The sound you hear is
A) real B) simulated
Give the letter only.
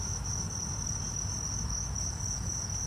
A